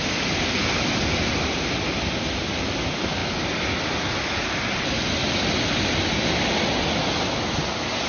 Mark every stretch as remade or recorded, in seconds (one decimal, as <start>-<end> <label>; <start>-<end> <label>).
0.0-8.1 recorded